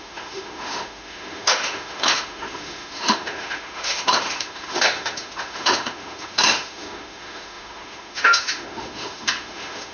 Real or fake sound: fake